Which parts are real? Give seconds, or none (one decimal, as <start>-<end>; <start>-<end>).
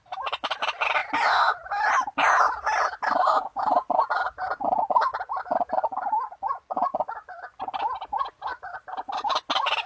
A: 0.0-9.9